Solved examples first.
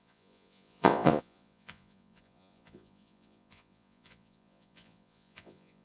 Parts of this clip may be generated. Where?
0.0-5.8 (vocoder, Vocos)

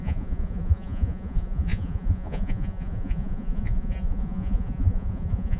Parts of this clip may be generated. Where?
0.0-5.6 (vocoder, Vocos)